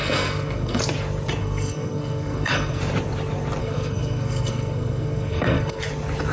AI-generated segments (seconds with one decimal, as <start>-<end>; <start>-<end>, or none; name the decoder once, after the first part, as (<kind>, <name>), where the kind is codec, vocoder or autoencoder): 0.0-0.8 (codec, SNAC); 1.4-2.8; 3.6-5.8